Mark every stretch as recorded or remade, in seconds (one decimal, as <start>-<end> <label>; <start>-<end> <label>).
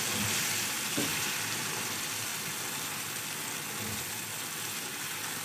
0.0-5.4 recorded